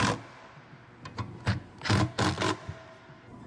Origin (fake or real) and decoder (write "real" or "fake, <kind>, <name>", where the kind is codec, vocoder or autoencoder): real